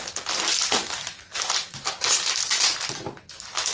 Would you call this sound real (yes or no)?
yes